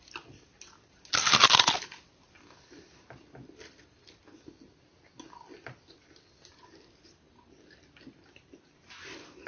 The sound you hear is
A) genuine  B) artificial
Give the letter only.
A